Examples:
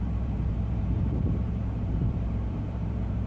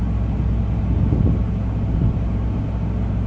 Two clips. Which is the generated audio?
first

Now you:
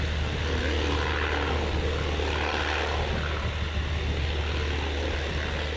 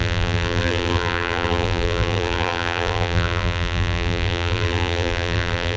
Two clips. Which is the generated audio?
second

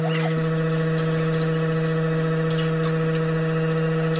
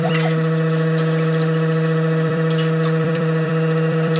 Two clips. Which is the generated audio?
second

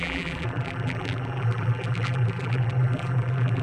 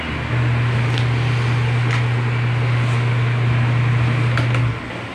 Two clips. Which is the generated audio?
first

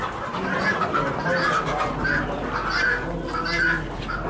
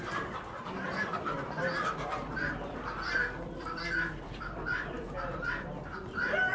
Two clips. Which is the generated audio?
second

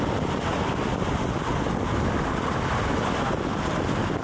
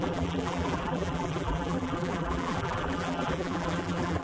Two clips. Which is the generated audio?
second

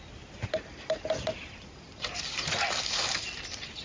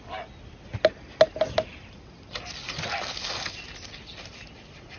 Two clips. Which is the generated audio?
first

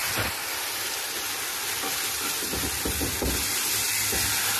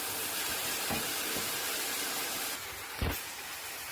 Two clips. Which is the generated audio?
second